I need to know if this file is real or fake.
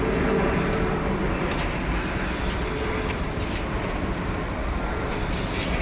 real